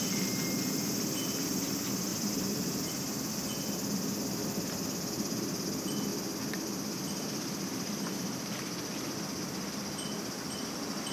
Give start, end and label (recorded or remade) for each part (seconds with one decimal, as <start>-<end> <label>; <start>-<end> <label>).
0.0-2.1 recorded; 2.1-3.3 remade; 3.3-11.1 recorded